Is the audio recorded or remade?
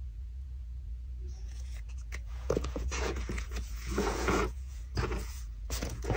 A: remade